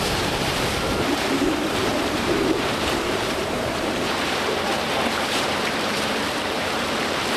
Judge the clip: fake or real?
fake